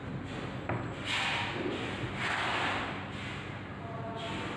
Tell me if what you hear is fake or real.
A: real